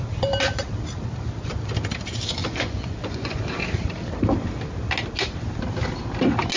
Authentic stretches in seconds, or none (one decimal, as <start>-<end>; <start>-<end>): 0.0-2.4; 3.4-6.6